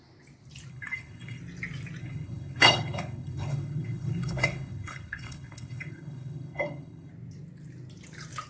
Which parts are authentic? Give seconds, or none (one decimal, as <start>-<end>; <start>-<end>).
0.0-0.7; 1.4-2.0; 7.1-8.5